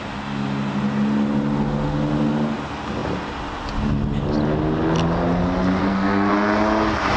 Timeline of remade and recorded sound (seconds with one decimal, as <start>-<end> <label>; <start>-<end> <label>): 0.0-5.8 recorded; 5.8-6.3 remade; 6.3-7.2 recorded